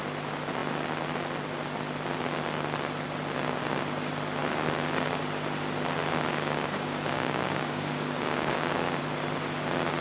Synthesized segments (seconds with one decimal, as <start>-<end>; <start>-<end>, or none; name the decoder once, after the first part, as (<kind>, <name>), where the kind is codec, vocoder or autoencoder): 6.3-9.0 (codec, DAC)